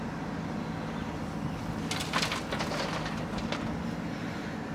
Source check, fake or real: real